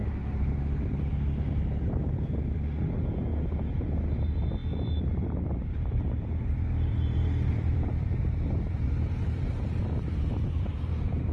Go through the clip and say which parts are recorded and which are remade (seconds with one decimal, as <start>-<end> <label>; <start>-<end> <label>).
0.0-1.1 remade; 1.1-4.6 recorded; 4.6-9.8 remade; 9.8-11.3 recorded